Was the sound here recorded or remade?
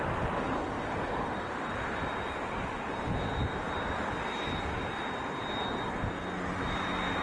recorded